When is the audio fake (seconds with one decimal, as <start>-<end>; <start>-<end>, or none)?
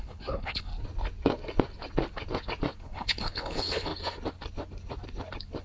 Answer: 0.0-0.7; 2.8-3.9